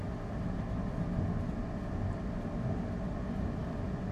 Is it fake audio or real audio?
real